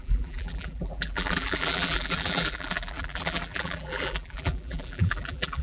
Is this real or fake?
fake